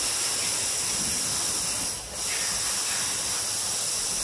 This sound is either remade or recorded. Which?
recorded